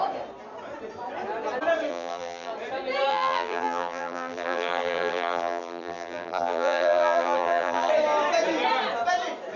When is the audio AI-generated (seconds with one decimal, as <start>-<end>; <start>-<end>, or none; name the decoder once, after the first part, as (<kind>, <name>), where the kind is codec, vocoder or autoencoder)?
1.9-2.5 (vocoder, BigVGAN v2); 3.1-7.9